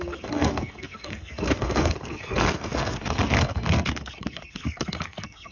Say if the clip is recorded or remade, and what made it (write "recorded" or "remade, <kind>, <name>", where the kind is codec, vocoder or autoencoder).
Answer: remade, codec, SNAC